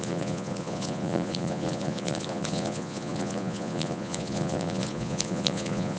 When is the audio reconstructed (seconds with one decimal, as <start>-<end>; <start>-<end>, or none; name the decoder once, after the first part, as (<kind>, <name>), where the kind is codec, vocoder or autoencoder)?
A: 0.0-6.0 (vocoder, Vocos)